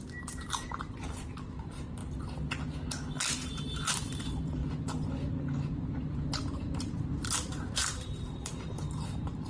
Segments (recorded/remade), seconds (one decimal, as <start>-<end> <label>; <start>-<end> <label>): 0.0-2.0 remade; 2.0-3.9 recorded; 3.9-4.6 remade; 4.6-5.8 recorded; 5.8-9.5 remade